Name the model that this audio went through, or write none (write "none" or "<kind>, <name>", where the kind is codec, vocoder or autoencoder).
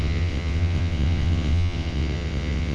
vocoder, WaveNeXt